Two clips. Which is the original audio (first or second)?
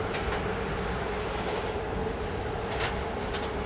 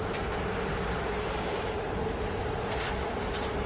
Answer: first